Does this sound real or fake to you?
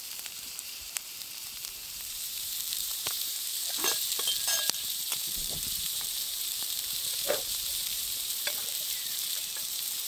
fake